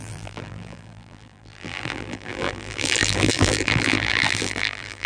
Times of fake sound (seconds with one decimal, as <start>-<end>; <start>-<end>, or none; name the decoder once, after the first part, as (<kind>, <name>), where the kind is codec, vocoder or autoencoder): 0.0-5.1 (vocoder, BigVGAN v2)